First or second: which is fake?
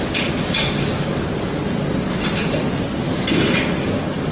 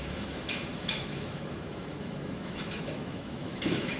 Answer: second